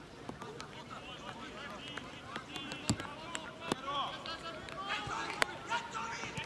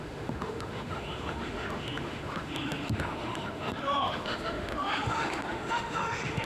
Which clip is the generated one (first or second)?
second